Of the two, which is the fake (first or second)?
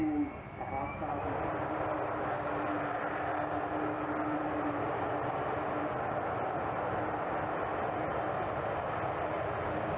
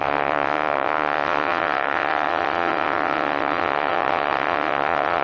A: second